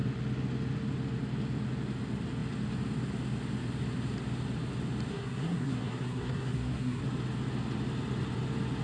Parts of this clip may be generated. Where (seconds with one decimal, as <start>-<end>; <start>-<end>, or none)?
5.1-7.0

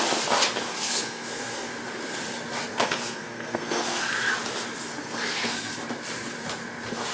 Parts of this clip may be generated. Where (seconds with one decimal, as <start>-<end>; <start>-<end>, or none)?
0.7-1.7; 2.7-4.2; 5.0-5.7